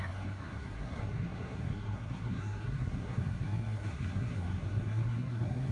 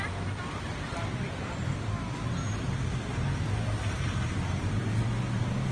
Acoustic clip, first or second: second